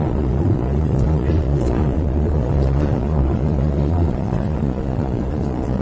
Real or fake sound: fake